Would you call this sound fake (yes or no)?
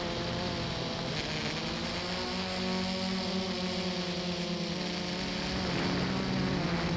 no